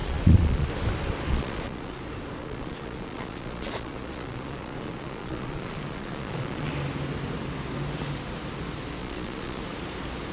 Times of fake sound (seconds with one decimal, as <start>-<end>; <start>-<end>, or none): 0.0-0.7; 1.3-2.0; 2.4-6.7; 9.0-9.6